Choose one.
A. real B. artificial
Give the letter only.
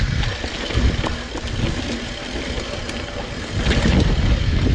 A